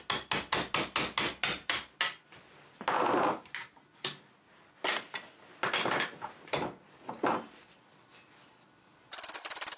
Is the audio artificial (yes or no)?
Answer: no